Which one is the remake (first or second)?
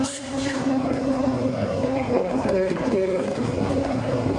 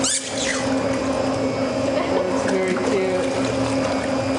first